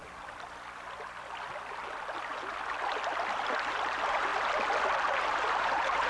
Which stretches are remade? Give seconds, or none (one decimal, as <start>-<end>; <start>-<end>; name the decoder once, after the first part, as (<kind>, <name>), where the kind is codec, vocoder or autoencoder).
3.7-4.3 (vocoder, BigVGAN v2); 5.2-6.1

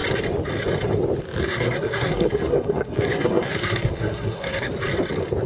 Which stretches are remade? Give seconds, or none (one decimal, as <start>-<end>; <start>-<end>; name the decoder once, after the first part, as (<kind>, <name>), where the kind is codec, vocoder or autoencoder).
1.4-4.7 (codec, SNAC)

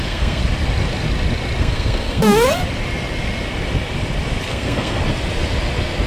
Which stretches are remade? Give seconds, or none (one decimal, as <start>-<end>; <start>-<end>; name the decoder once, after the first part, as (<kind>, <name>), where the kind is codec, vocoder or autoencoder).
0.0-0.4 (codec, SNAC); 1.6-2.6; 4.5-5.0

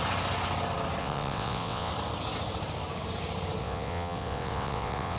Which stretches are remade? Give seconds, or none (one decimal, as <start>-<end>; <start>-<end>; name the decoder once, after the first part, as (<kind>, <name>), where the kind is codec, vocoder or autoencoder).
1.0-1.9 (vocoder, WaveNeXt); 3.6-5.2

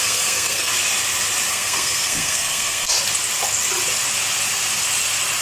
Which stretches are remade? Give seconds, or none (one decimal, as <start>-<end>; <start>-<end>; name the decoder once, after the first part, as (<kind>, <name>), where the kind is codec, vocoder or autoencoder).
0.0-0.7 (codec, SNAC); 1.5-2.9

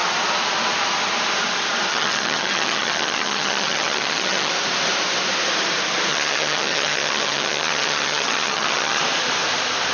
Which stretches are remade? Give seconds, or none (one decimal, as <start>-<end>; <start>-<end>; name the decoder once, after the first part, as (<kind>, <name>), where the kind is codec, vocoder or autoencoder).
1.9-4.5 (vocoder, HiFi-GAN); 6.1-9.0